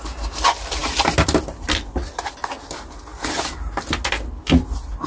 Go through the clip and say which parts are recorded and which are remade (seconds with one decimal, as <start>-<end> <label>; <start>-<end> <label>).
0.0-5.1 recorded